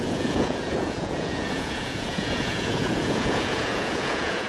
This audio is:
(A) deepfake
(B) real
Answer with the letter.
A